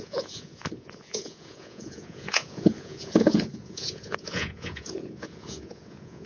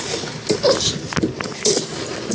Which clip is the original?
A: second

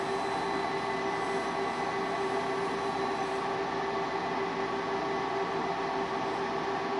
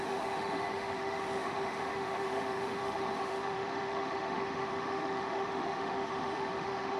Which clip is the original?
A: first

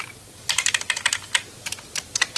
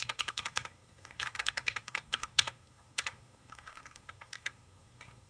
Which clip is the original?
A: first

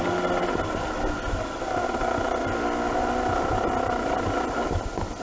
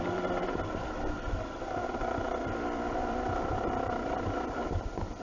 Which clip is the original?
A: first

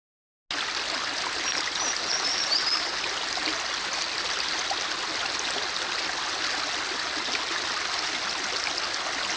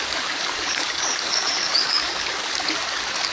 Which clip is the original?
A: first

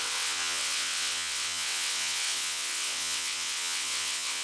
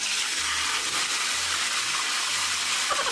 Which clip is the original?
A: second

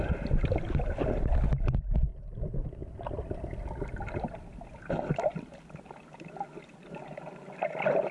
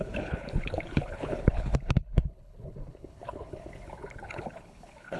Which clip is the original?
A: first